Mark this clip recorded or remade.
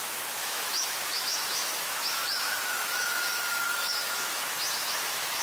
remade